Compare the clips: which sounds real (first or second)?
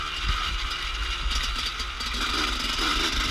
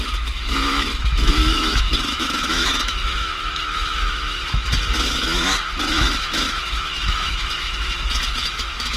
first